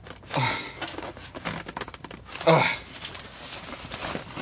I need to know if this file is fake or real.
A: real